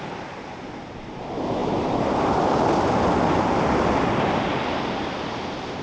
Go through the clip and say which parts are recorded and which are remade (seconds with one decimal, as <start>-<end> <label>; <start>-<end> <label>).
0.0-5.8 recorded